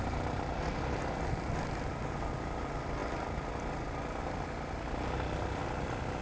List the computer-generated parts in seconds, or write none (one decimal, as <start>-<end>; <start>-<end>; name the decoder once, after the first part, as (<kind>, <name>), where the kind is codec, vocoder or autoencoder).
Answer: none